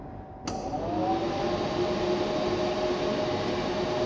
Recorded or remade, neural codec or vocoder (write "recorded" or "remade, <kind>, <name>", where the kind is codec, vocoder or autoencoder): recorded